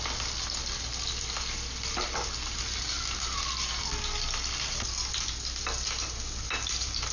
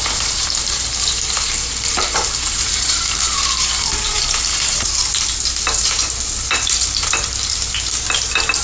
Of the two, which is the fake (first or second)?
second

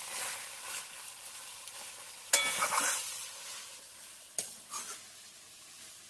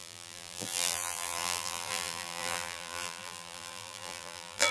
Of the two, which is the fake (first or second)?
second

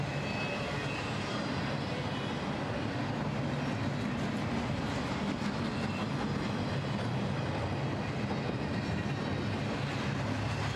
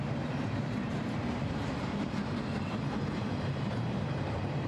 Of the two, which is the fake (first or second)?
second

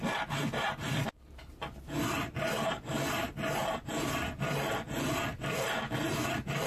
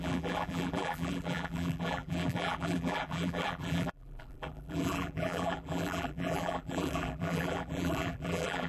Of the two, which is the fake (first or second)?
second